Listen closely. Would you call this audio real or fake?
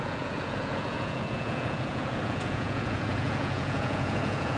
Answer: fake